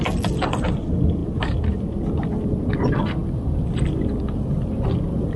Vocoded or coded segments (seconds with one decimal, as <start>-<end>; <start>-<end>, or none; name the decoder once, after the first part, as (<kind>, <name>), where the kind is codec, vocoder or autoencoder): none